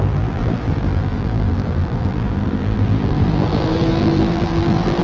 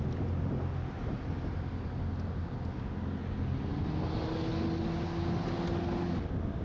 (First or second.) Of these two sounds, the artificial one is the first